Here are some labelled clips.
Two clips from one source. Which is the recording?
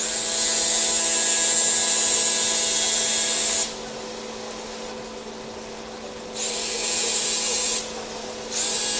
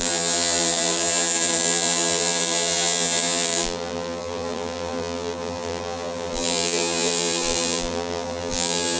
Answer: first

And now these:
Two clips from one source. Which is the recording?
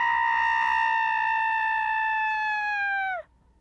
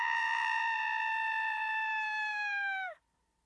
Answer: first